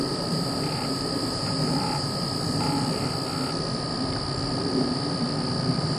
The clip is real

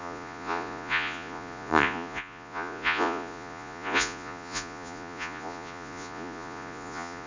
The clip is fake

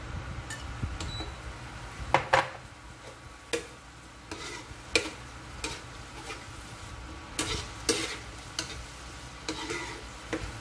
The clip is real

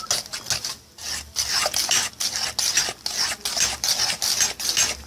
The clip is real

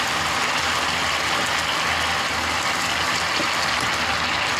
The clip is real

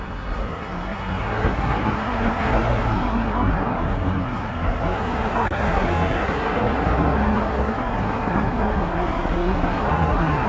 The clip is fake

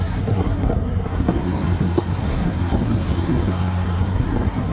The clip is fake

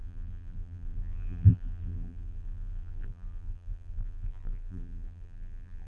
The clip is fake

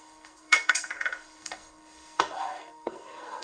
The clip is fake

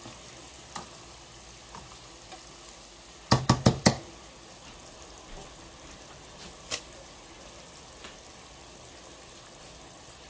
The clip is real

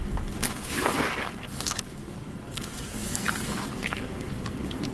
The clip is fake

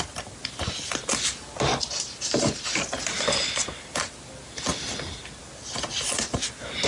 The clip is real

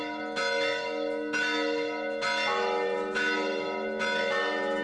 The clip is real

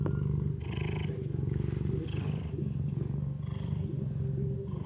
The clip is real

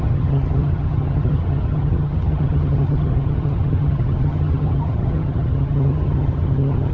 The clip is fake